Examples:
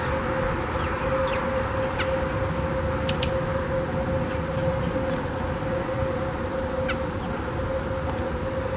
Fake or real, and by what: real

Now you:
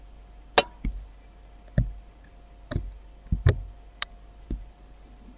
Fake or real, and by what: real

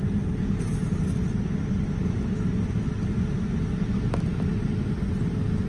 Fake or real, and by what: real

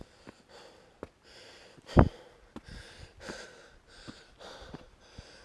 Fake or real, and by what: real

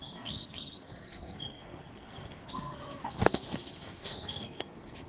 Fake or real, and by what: fake, codec, SNAC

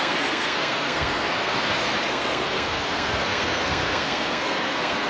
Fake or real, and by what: fake, codec, SNAC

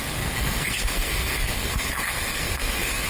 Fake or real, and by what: fake, codec, SNAC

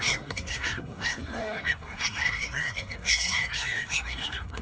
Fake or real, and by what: fake, codec, SNAC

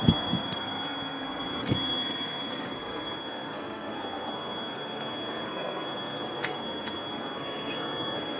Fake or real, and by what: fake, codec, SNAC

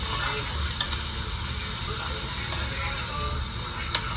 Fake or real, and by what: real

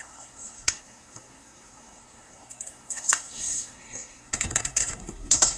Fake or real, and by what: fake, codec, SNAC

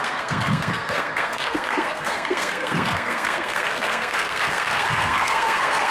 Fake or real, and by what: fake, codec, SNAC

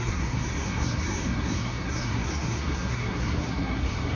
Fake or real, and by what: fake, codec, SNAC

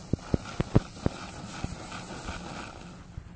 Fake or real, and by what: real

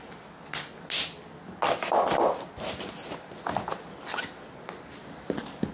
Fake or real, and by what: real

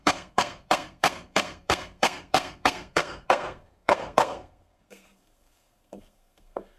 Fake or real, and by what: fake, codec, SNAC